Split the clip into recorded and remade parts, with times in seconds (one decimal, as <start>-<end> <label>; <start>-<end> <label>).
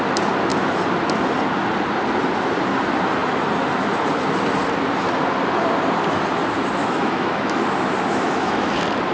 0.0-6.8 recorded; 6.8-7.6 remade; 7.6-8.1 recorded; 8.1-8.7 remade; 8.7-9.1 recorded